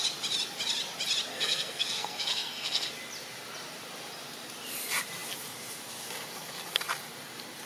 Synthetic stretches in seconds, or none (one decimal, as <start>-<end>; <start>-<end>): 1.3-2.9